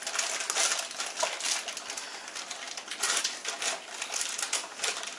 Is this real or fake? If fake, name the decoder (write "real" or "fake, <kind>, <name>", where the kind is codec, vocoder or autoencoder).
real